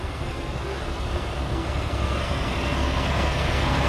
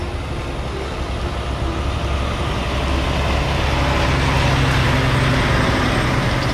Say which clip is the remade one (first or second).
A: first